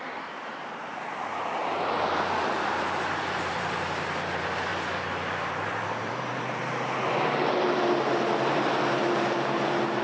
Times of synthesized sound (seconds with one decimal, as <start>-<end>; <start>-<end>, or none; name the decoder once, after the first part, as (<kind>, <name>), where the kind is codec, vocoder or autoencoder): 0.0-10.0 (vocoder, BigVGAN v2)